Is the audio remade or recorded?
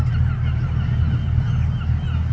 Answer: recorded